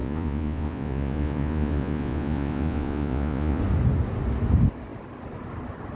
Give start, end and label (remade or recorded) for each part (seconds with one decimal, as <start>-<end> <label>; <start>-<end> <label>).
0.0-3.6 remade; 3.6-6.0 recorded